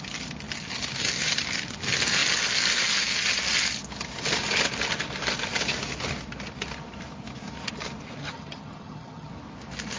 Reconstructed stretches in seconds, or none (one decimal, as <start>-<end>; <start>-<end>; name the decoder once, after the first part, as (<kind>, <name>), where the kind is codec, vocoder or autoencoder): 8.2-9.3 (vocoder, HiFi-GAN)